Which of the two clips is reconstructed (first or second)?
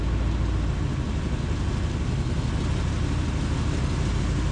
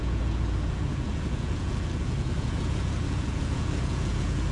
second